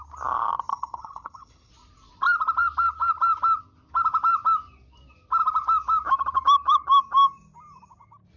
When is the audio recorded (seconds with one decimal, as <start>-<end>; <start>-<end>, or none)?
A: 0.0-0.7; 1.7-8.4